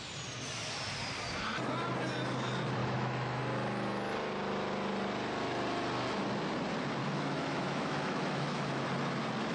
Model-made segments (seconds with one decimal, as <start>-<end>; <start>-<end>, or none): 2.8-3.4; 7.0-8.8